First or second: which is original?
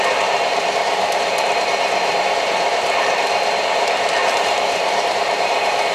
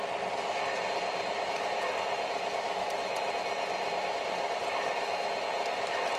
second